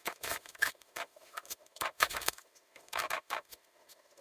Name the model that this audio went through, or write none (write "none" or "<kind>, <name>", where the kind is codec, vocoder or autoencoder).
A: autoencoder, DAC-VAE